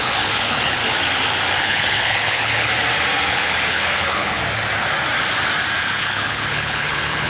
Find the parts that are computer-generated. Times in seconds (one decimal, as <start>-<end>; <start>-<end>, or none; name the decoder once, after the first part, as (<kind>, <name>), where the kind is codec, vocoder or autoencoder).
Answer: 0.0-0.8 (codec, HILCodec); 1.6-2.7; 3.3-4.4; 5.8-7.3